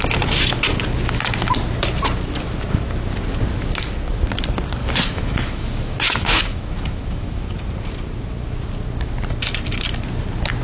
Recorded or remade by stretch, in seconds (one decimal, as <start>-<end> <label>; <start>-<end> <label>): 0.0-4.8 recorded; 4.8-7.5 remade; 7.5-10.6 recorded